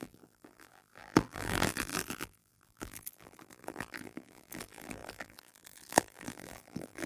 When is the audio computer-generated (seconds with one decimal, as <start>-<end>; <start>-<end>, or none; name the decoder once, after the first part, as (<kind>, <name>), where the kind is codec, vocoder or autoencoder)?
0.0-7.1 (vocoder, BigVGAN v2)